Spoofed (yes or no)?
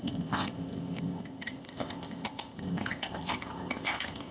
yes